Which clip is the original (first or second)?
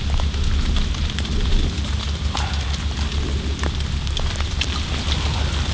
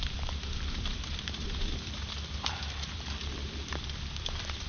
first